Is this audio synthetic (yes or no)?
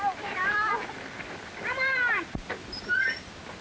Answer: yes